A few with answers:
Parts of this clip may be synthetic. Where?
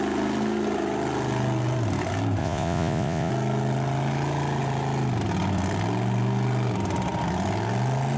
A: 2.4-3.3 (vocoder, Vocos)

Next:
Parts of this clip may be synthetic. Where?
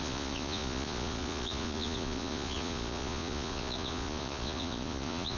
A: 0.0-5.4 (vocoder, Vocos)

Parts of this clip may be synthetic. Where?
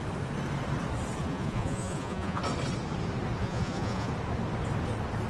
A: 1.2-2.4 (vocoder, Vocos); 3.4-4.1